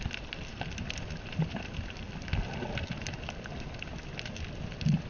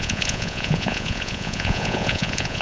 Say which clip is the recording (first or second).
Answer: first